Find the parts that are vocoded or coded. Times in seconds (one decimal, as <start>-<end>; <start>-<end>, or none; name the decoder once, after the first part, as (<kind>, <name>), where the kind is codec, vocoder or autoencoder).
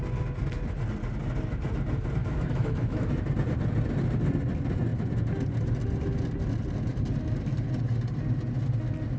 2.2-3.1 (autoencoder, DAC-VAE)